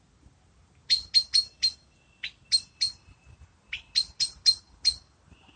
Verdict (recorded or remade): recorded